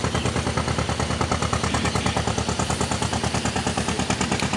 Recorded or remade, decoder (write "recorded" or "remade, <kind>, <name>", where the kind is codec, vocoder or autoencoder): recorded